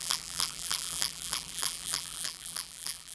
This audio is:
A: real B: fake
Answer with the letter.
B